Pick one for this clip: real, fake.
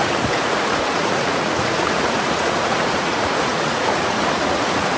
fake